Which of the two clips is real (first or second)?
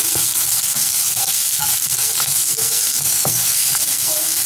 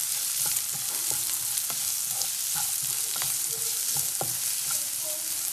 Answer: second